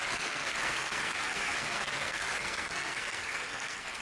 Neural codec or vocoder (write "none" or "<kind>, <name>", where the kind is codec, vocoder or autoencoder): codec, SNAC